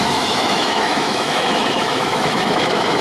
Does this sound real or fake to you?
fake